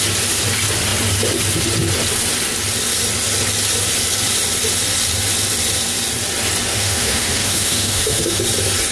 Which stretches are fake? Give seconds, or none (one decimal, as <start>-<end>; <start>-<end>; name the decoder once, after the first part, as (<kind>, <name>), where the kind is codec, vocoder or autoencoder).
6.7-8.4 (autoencoder, DAC-VAE)